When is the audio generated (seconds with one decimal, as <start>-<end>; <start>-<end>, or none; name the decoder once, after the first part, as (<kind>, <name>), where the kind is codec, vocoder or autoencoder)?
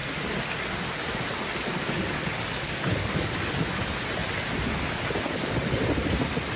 1.7-3.4 (codec, DAC)